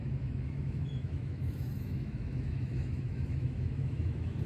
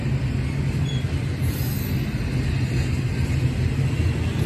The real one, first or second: second